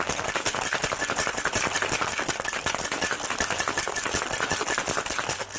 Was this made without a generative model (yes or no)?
yes